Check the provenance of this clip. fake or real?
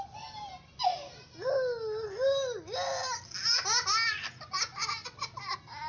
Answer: real